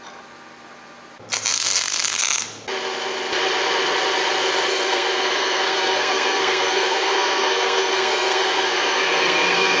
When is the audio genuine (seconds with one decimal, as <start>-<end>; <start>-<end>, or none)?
0.0-1.5; 2.2-4.7